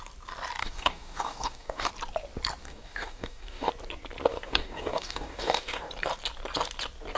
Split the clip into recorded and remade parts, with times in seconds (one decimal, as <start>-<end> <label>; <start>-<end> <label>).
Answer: 0.0-0.6 recorded; 0.6-1.9 remade; 1.9-2.6 recorded; 2.6-3.7 remade; 3.7-4.3 recorded; 4.3-5.9 remade; 5.9-7.2 recorded